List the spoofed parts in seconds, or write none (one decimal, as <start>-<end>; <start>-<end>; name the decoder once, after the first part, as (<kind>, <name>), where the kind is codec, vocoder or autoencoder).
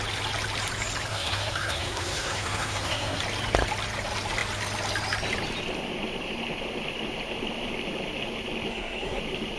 1.1-3.2 (codec, SNAC); 8.7-9.2